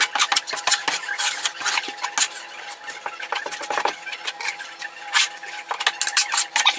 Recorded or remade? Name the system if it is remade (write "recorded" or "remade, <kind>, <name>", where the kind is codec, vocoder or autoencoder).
recorded